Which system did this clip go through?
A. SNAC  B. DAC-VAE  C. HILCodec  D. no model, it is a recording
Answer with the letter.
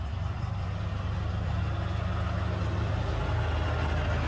D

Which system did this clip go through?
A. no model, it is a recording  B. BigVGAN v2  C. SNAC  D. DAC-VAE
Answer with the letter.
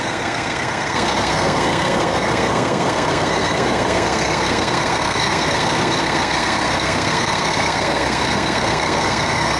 C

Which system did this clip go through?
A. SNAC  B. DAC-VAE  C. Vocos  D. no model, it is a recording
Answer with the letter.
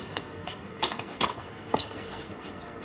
A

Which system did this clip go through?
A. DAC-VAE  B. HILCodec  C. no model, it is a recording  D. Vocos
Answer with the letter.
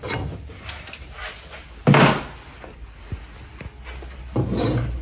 C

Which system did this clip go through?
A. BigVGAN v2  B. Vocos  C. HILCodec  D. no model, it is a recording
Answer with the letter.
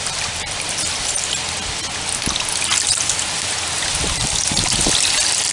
D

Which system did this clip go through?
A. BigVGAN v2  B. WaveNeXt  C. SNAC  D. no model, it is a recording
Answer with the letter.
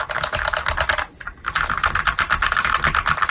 D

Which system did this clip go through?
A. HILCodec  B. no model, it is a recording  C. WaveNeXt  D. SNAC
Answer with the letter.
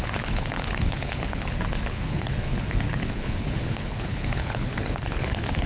A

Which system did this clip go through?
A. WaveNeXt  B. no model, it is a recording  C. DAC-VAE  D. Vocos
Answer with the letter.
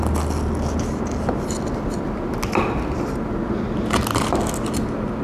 B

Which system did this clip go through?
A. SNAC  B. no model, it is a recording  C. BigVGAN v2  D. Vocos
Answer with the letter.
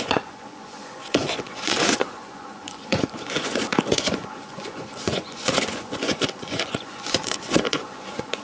D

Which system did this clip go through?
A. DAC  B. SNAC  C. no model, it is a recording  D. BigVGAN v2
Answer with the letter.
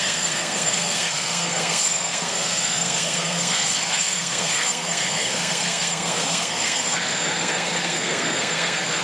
B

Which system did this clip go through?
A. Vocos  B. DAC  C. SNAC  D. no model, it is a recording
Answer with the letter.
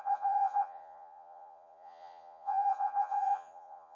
A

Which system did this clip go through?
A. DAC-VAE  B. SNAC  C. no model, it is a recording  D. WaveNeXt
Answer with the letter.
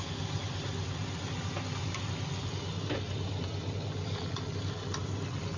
C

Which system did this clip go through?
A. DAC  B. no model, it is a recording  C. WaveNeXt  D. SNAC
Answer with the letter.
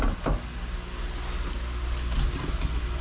B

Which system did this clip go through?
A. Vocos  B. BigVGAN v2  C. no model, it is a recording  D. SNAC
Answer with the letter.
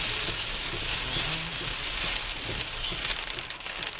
C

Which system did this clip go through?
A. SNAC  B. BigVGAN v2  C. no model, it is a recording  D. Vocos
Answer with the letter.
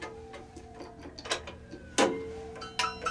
C